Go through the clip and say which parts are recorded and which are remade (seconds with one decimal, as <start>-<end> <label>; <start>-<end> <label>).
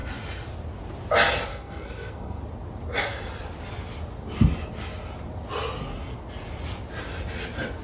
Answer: 0.0-1.5 recorded; 1.5-2.4 remade; 2.4-7.8 recorded